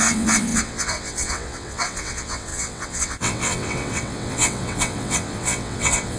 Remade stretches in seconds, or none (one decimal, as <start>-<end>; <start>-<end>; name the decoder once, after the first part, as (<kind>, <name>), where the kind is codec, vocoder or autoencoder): 0.0-6.2 (vocoder, WaveNeXt)